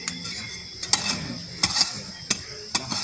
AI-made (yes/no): no